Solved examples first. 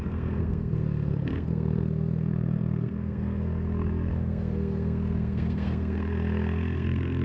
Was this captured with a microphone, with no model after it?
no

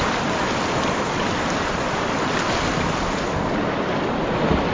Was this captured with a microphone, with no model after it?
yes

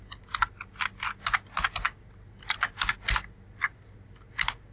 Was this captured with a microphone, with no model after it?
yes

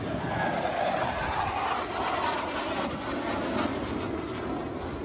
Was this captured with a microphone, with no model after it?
yes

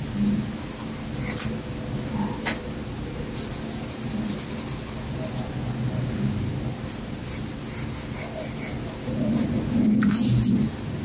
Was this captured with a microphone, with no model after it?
yes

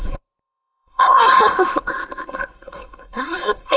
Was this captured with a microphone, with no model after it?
no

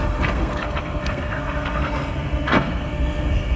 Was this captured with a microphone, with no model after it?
no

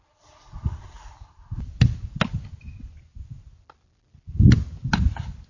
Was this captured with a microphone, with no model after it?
yes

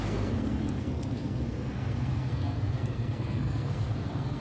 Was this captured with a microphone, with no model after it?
no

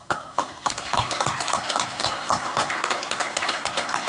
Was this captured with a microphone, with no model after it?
no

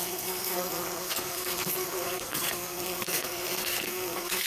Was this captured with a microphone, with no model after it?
no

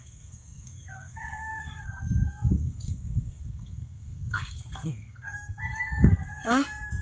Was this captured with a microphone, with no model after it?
no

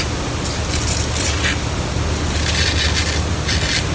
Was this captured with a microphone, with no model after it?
yes